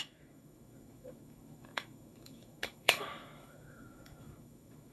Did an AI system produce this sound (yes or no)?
yes